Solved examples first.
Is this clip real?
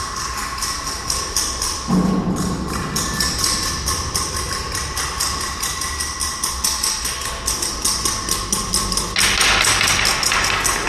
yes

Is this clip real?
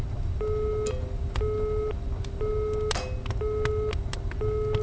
yes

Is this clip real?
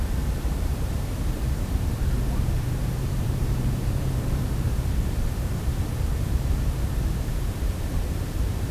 no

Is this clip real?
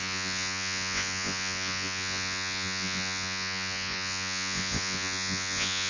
no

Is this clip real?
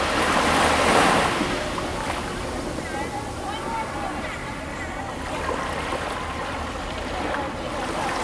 yes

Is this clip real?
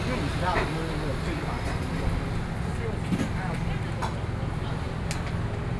yes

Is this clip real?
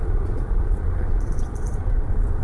no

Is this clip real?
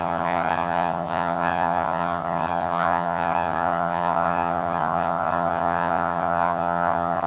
no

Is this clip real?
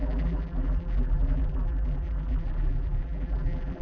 no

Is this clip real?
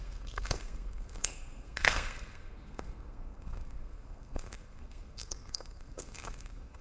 no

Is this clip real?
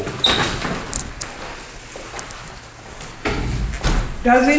yes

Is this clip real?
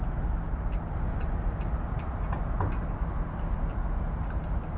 yes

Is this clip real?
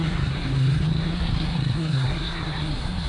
no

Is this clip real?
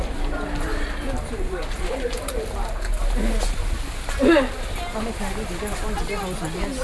yes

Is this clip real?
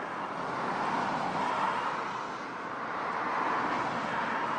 yes